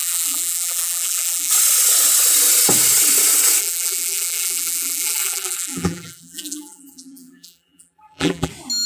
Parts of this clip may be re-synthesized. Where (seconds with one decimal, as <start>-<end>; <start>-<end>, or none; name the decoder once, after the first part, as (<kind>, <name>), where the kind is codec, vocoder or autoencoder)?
0.0-1.5 (vocoder, BigVGAN v2); 3.6-8.5